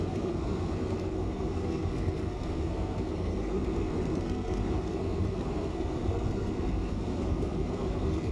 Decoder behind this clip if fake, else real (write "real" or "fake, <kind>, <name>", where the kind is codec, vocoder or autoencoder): fake, codec, SNAC